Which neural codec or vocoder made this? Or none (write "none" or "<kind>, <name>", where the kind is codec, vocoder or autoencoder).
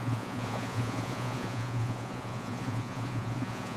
vocoder, Vocos